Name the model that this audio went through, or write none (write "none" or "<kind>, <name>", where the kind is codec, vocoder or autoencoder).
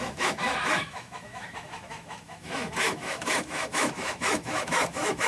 autoencoder, DAC-VAE